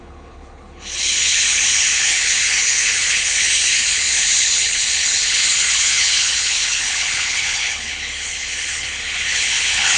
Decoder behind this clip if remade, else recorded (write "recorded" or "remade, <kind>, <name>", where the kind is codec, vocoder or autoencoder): remade, codec, HILCodec